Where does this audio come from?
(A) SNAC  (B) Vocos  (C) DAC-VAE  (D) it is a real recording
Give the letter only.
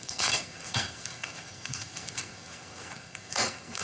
A